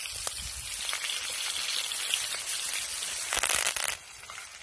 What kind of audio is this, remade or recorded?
recorded